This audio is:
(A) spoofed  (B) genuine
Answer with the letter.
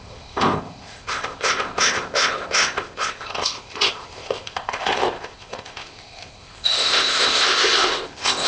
A